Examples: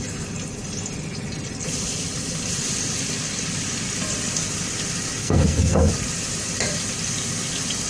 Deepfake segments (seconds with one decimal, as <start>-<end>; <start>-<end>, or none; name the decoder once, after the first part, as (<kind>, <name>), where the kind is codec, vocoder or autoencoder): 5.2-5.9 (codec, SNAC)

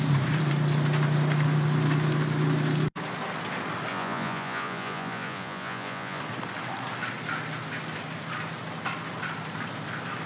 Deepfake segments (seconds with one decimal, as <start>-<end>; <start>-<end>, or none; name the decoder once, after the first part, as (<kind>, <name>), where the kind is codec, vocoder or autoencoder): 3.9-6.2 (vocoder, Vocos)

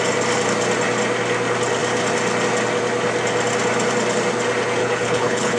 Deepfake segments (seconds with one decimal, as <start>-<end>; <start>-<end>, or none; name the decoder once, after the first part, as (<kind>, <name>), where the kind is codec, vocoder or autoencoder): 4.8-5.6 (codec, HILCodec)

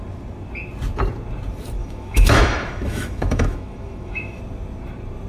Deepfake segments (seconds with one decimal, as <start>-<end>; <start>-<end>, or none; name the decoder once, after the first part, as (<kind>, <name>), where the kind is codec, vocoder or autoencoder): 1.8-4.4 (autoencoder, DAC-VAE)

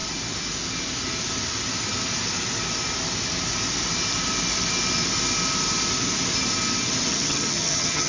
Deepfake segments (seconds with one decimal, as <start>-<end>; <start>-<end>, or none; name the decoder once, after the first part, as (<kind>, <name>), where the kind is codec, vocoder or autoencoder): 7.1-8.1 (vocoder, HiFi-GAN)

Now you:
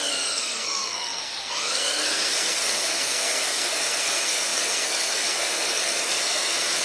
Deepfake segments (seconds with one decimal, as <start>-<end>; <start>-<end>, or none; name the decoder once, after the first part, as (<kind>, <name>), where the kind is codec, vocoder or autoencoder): 0.0-6.8 (codec, SNAC)

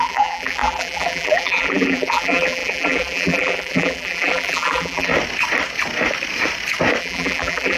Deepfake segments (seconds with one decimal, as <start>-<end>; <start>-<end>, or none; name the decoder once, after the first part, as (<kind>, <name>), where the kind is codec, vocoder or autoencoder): 0.0-5.1 (vocoder, BigVGAN v2); 7.0-7.8

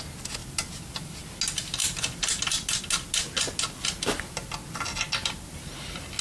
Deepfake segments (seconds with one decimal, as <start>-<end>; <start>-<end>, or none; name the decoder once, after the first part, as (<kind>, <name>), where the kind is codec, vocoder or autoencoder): none